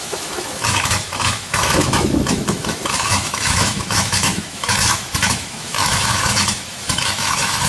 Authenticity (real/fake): fake